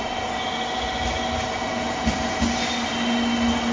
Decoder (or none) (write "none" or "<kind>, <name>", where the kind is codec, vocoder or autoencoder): none